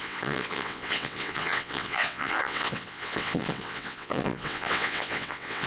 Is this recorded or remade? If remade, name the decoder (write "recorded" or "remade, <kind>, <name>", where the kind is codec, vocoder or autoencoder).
remade, vocoder, WaveNeXt